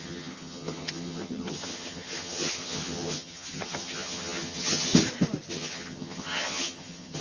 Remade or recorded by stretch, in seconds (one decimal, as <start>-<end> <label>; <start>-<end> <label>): 0.0-4.9 remade; 4.9-5.5 recorded; 5.5-7.2 remade